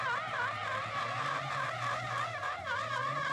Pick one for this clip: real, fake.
fake